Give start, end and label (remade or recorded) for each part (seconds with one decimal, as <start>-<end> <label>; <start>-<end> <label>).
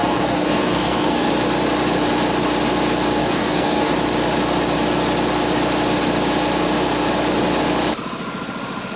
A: 0.0-1.3 remade; 1.3-3.2 recorded; 3.2-3.9 remade; 3.9-9.0 recorded